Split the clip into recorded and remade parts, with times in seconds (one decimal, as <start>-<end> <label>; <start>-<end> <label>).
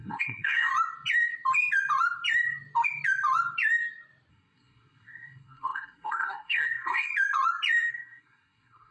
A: 0.0-0.7 remade; 0.7-4.3 recorded; 4.3-7.1 remade; 7.1-7.9 recorded; 7.9-8.9 remade